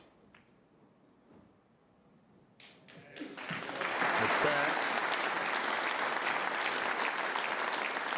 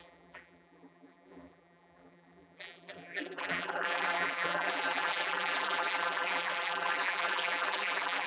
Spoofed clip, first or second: second